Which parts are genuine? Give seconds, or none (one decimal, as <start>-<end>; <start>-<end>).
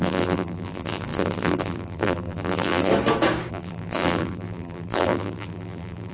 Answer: 2.9-3.5